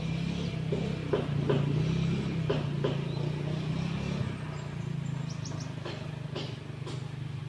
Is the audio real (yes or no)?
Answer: yes